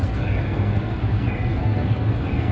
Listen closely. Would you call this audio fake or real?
fake